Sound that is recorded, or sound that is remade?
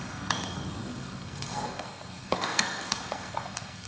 remade